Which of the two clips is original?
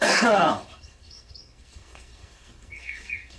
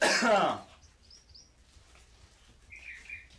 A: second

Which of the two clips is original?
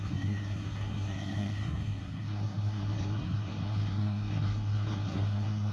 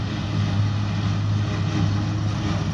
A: second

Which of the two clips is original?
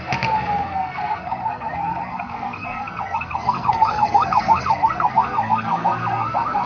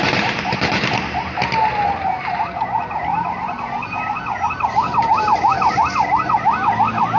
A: second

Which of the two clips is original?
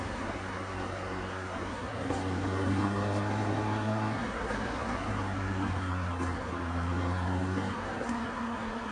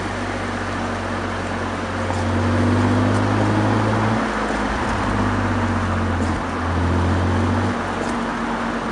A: second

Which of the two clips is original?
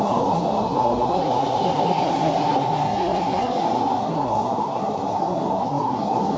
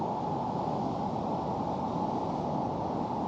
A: second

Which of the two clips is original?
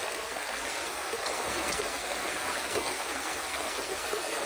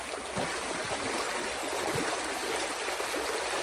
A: second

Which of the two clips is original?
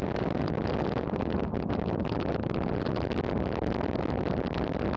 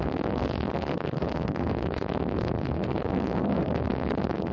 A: first